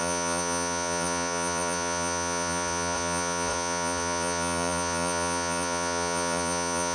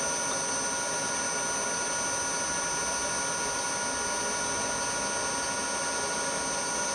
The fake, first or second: first